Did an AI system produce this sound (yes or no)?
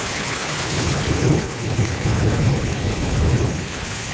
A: yes